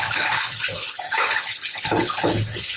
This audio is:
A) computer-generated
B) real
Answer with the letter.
A